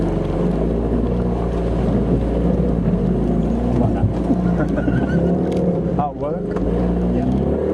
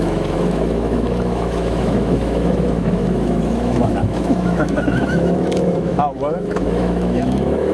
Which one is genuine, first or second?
first